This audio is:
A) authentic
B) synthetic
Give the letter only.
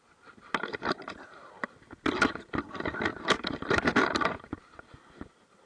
A